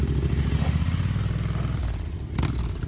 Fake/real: real